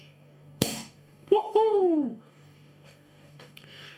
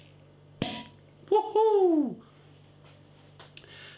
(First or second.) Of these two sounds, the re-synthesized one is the first